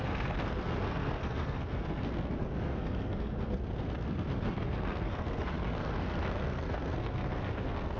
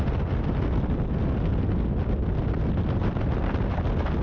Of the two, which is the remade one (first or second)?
first